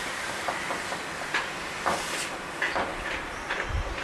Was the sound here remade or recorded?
recorded